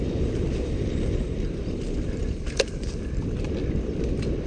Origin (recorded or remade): remade